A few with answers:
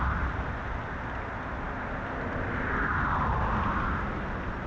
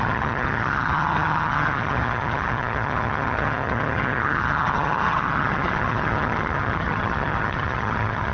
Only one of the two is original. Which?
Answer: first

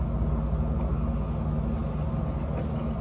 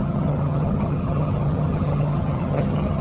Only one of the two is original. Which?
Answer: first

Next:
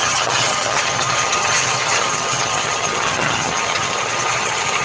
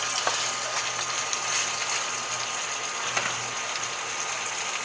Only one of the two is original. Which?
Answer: second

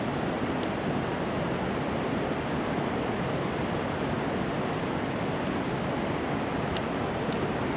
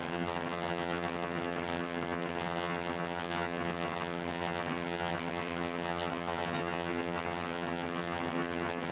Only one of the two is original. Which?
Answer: first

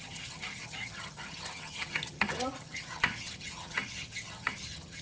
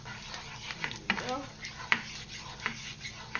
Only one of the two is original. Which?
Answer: second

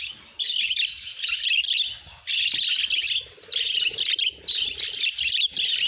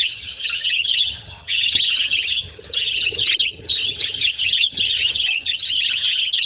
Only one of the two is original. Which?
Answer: first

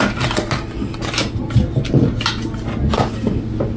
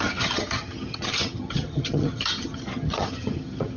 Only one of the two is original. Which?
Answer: first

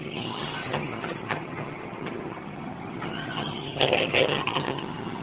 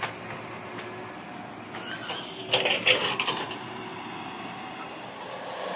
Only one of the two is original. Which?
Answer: second